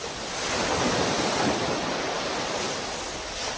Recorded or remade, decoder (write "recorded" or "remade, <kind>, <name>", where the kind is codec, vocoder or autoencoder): recorded